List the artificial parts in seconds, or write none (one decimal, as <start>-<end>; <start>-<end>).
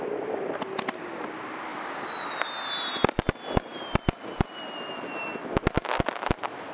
none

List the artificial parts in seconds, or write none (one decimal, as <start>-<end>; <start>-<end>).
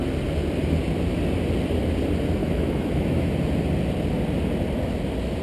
2.4-3.3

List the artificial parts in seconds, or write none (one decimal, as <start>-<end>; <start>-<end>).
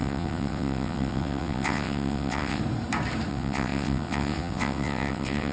0.0-2.6; 3.3-5.5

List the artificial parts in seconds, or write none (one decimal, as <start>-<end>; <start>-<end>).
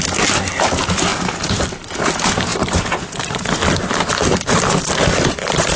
none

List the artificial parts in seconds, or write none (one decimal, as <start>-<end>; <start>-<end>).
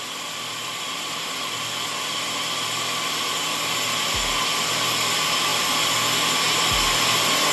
0.6-1.7; 5.5-6.1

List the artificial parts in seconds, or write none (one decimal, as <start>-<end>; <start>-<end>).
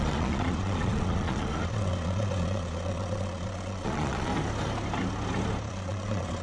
0.0-4.3; 5.7-6.4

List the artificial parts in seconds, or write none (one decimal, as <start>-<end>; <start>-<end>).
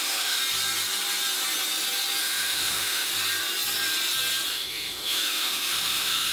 0.0-0.4; 2.2-3.1; 4.5-6.3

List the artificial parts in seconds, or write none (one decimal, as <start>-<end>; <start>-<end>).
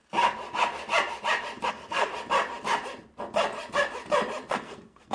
1.7-2.1; 4.5-5.1